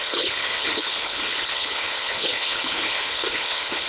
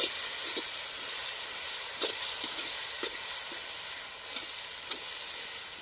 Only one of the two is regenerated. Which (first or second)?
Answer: first